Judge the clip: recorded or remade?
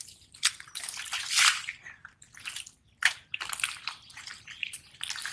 remade